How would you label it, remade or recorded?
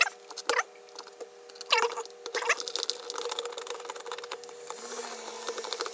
recorded